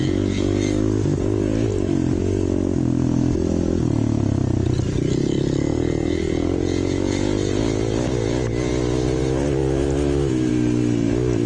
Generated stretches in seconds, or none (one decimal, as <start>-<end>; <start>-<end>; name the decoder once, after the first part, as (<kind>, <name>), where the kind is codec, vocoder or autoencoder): none